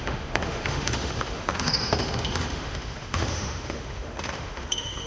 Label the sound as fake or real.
fake